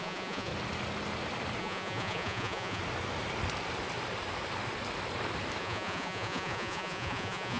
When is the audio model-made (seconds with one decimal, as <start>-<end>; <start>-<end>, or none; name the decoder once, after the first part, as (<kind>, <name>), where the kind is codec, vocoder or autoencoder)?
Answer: 0.0-0.5 (vocoder, Vocos); 1.6-2.8; 5.6-7.6